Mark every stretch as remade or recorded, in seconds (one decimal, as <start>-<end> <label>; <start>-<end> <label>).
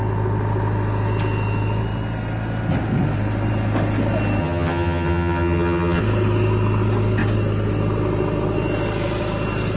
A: 0.0-4.4 recorded; 4.4-6.0 remade; 6.0-9.8 recorded